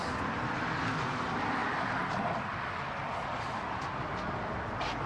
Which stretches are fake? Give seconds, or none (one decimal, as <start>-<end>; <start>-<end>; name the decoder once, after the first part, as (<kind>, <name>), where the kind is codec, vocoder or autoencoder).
none